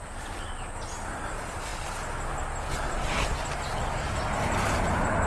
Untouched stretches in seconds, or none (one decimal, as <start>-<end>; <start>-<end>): 0.0-5.3